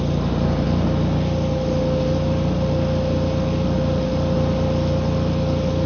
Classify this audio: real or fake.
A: real